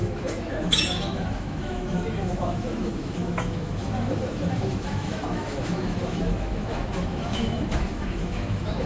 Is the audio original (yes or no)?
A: no